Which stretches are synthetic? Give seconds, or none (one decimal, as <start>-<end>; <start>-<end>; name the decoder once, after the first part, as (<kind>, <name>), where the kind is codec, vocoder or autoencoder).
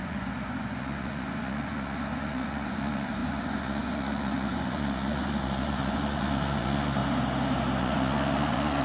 0.0-7.0 (vocoder, Vocos); 7.8-8.8